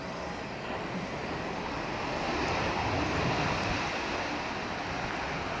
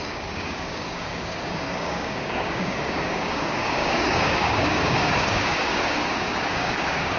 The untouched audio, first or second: first